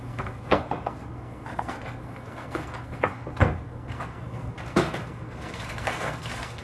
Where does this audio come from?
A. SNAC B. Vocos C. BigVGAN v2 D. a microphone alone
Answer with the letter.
A